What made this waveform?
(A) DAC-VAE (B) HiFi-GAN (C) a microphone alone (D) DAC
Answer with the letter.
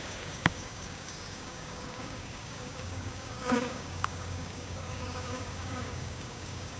D